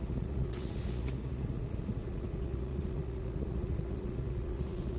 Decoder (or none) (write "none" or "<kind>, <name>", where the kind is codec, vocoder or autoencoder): vocoder, Vocos